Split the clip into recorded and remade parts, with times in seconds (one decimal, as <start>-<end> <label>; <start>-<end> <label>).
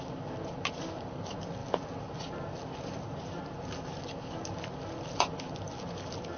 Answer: 0.0-6.4 recorded